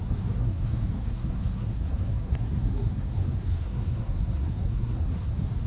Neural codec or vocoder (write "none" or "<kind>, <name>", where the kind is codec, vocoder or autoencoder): codec, SNAC